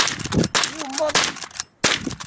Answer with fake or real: real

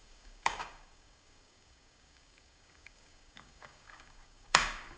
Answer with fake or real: fake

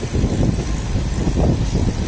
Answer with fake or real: real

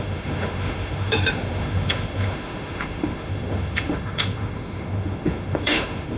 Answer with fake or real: fake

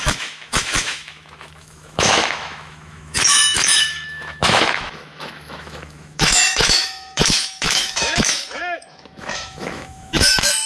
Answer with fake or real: fake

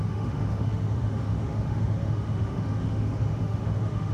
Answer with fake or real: fake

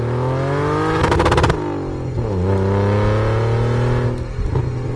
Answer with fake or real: real